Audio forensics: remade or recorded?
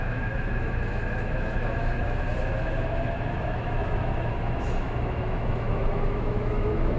remade